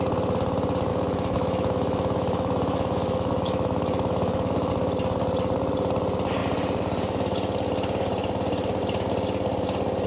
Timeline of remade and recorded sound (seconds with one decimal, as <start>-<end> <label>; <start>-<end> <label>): 0.0-0.9 recorded; 0.9-4.7 remade; 4.7-10.1 recorded